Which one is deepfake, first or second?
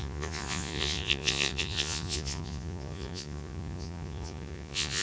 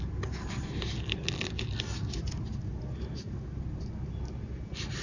first